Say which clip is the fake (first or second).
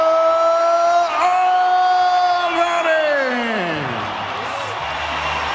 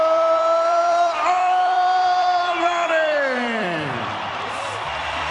second